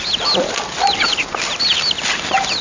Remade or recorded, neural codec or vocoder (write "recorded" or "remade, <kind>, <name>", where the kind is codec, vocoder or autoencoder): recorded